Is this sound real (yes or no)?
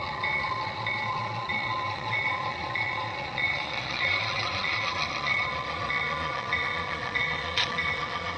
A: no